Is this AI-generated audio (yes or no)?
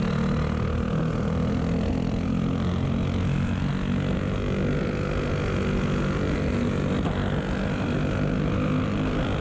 no